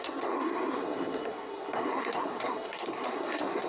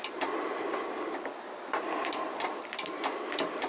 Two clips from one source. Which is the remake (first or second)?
first